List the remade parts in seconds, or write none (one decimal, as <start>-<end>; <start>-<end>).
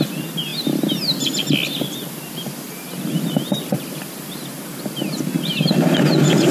none